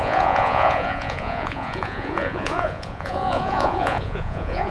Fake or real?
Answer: fake